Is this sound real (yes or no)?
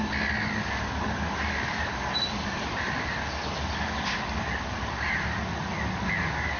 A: yes